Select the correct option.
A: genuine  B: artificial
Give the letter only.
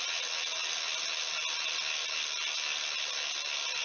A